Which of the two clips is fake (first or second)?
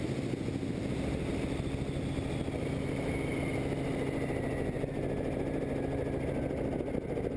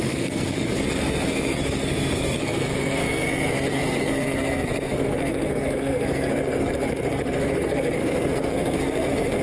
second